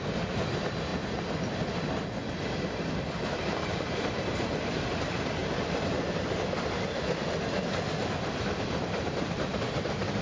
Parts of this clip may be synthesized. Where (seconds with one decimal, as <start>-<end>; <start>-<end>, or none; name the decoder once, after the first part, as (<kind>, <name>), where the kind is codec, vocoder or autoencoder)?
0.0-0.9 (vocoder, BigVGAN v2); 3.1-5.4; 8.2-10.2